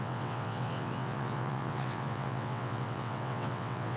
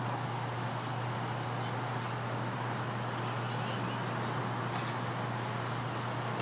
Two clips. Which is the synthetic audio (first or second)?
first